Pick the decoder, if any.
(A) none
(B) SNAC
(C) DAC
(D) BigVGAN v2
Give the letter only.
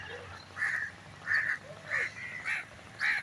A